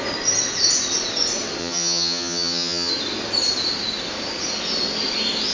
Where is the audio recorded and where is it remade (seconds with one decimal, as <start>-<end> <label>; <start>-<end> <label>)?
0.0-1.6 recorded; 1.6-2.9 remade; 2.9-5.5 recorded